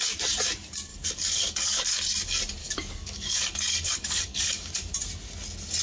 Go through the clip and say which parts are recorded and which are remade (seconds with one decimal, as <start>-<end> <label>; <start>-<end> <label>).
0.0-0.9 recorded; 0.9-2.0 remade; 2.0-2.6 recorded; 2.6-4.9 remade; 4.9-5.8 recorded